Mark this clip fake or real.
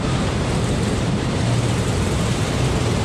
fake